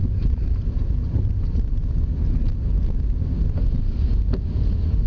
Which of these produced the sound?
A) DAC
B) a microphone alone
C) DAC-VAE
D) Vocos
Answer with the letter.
B